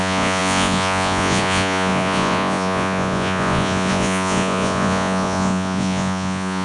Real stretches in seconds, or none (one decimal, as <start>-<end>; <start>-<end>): none